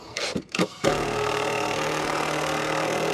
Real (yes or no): no